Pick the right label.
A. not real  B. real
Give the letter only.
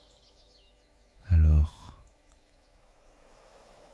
A